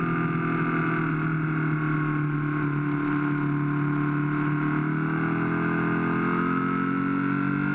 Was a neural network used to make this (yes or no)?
no